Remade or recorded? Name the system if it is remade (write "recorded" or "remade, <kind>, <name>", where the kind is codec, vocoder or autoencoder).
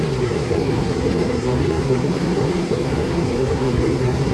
remade, codec, SNAC